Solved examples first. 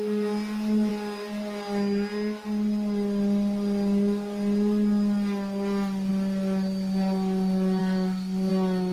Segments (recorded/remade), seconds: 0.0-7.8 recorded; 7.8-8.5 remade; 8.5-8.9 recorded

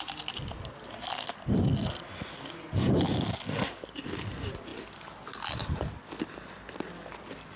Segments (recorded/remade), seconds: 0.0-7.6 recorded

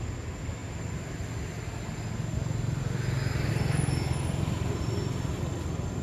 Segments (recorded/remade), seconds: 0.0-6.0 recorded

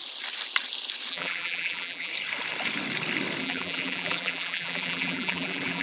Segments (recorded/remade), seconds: 0.0-1.1 recorded; 1.1-2.1 remade; 2.1-3.4 recorded; 3.4-5.8 remade

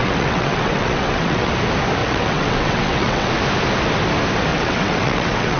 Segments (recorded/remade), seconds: 0.0-1.5 remade; 1.5-2.0 recorded; 2.0-3.3 remade; 3.3-4.5 recorded; 4.5-5.6 remade

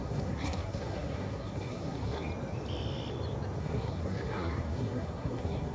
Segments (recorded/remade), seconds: 0.0-2.3 remade; 2.3-3.6 recorded; 3.6-5.7 remade